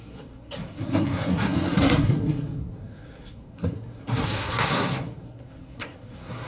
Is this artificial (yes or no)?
yes